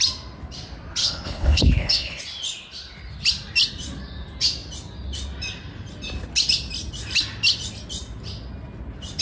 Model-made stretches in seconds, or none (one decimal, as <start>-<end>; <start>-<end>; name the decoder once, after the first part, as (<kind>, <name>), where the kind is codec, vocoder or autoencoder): 1.0-2.2 (codec, HILCodec)